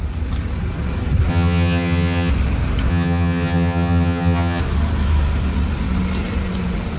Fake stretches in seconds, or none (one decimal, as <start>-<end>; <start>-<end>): 1.3-2.3; 2.9-4.6